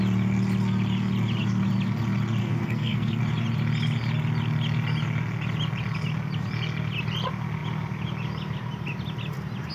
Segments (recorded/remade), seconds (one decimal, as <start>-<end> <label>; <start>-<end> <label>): 0.0-2.4 recorded; 2.4-3.2 remade; 3.2-9.7 recorded